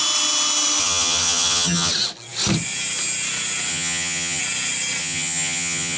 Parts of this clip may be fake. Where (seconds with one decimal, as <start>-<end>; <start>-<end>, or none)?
0.8-1.9; 3.7-4.4; 5.0-6.0